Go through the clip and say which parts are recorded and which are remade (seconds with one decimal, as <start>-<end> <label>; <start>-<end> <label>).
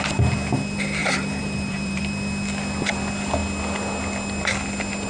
0.0-1.0 recorded; 1.0-2.0 remade; 2.0-5.1 recorded